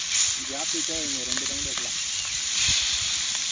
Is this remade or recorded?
recorded